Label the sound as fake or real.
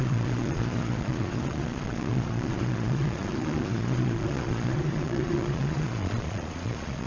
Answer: fake